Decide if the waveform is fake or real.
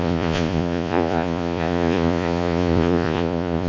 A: fake